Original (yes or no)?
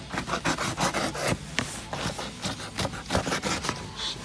yes